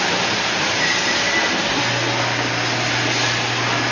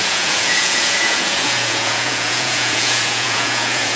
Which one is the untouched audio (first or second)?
first